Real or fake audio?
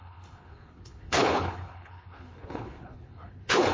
fake